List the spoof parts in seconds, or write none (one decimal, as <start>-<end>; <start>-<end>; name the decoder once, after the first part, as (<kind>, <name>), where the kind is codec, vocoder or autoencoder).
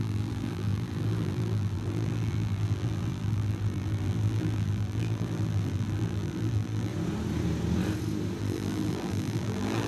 0.0-6.9 (vocoder, BigVGAN v2); 8.4-9.9